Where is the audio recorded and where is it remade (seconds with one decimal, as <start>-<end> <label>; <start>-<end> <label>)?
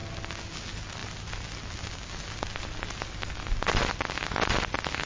0.0-5.1 recorded